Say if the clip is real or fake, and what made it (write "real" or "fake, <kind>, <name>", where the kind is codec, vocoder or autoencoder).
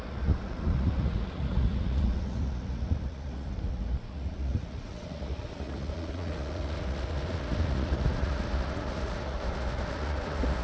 fake, vocoder, Vocos